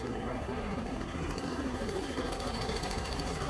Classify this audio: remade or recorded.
remade